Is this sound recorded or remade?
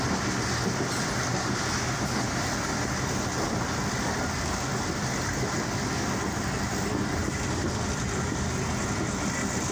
recorded